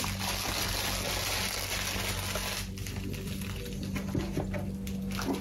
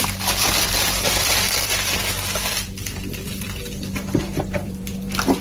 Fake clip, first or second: second